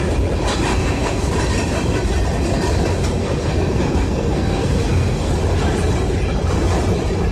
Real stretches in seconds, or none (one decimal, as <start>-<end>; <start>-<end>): 0.0-0.7; 1.3-3.2; 5.3-7.3